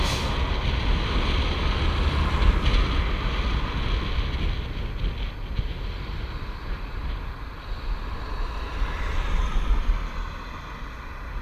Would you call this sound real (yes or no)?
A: yes